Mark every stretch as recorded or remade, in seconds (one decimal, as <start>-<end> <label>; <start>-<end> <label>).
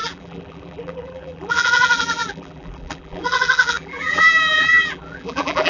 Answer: 0.0-5.7 remade